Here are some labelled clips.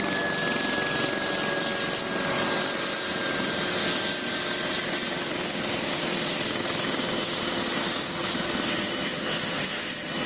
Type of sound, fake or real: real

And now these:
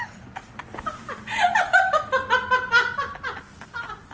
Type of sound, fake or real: real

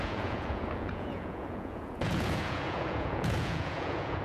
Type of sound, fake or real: fake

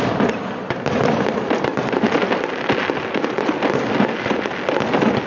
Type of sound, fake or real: real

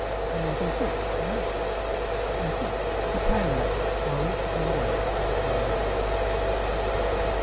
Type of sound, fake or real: real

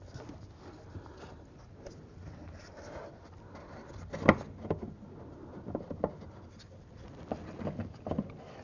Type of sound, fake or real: real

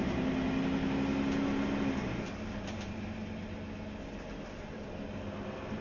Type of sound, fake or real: real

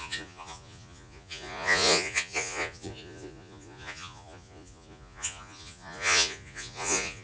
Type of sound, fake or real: fake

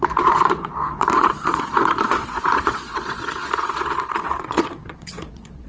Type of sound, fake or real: fake